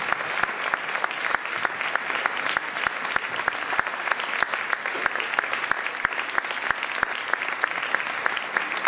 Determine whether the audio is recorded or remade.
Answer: recorded